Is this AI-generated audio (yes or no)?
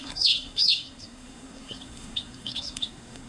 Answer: yes